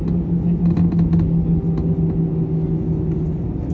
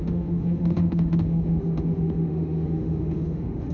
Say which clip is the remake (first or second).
second